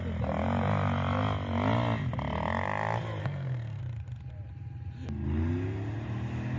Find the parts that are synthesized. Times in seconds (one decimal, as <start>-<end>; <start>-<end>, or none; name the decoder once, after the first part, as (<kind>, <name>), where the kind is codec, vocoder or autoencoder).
3.2-3.8 (codec, SNAC)